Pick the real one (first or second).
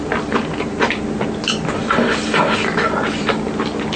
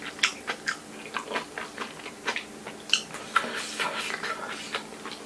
second